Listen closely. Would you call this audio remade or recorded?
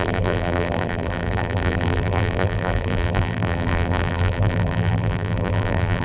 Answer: remade